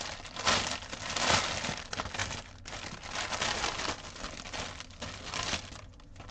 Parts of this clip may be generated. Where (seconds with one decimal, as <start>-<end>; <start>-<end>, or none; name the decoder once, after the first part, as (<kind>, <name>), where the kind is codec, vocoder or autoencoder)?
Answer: none